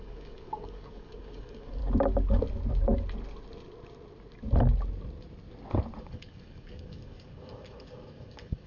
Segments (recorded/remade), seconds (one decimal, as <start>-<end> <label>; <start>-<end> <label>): 0.0-1.8 remade; 1.8-6.0 recorded; 6.0-8.7 remade